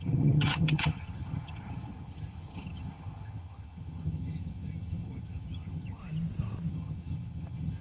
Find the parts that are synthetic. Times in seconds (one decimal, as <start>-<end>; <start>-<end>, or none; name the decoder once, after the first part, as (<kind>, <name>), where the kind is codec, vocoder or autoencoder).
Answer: 0.0-6.0 (vocoder, HiFi-GAN); 6.7-7.8